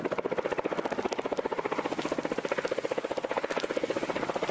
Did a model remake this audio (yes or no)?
no